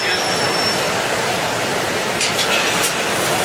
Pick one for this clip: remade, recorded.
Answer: recorded